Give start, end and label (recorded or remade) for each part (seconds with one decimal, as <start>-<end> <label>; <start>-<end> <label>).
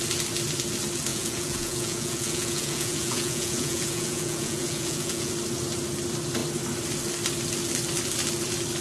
0.0-1.1 recorded; 1.1-5.3 remade; 5.3-8.8 recorded